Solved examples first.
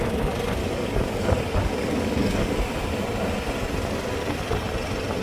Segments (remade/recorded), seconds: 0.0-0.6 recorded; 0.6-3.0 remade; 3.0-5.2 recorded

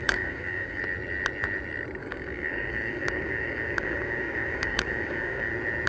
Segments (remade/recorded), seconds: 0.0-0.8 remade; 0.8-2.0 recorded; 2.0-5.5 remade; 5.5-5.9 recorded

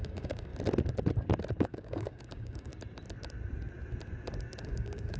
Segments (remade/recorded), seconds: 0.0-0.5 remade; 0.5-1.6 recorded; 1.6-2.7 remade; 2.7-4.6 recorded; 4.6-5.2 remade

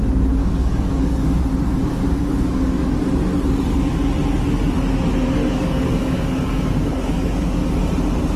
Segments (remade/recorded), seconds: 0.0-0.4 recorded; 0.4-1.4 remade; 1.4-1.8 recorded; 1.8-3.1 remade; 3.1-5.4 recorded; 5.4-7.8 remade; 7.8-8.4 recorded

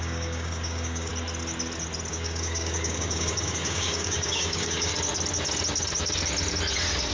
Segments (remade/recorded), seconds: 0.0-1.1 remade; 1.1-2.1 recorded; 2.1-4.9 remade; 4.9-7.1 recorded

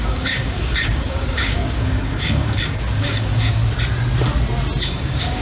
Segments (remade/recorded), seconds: 0.0-3.6 remade; 3.6-4.8 recorded; 4.8-5.4 remade